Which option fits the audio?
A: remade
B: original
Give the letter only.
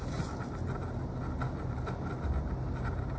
B